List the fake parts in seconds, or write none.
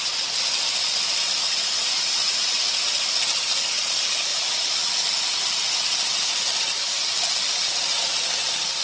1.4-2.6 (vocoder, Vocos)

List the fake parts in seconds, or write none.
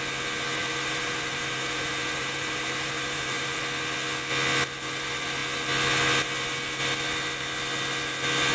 0.6-3.6 (vocoder, BigVGAN v2)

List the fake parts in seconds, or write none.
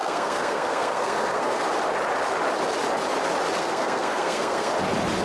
0.0-1.6 (codec, SNAC); 3.6-4.7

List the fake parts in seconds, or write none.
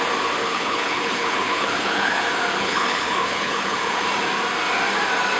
0.4-2.2 (codec, HILCodec); 2.6-4.0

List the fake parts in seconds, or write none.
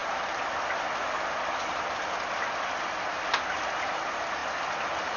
none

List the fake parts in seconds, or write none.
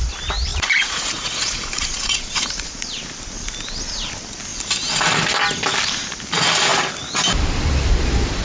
0.5-2.7 (vocoder, Vocos)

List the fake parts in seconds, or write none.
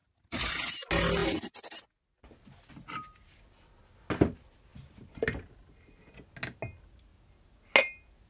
none